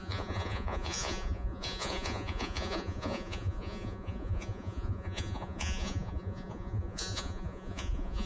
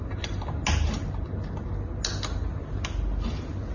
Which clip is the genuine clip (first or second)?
second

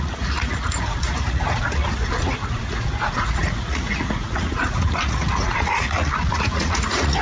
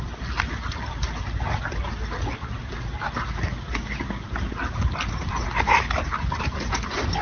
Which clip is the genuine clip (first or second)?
second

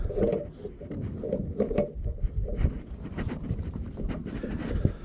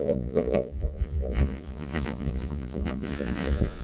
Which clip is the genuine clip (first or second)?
first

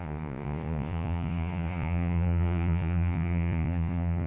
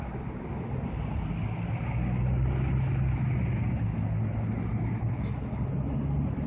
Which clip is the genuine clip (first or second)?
second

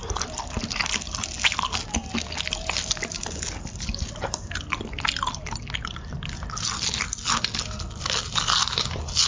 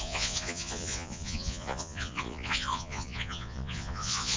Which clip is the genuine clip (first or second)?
first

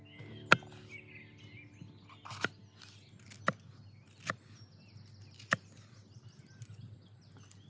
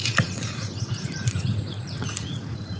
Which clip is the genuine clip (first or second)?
first